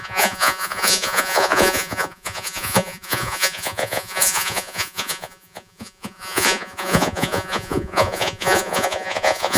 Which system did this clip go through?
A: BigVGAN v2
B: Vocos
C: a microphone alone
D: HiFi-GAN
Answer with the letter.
B